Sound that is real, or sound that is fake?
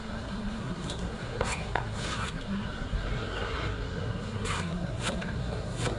fake